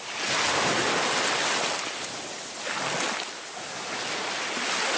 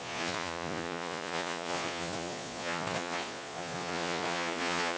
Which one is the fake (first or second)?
second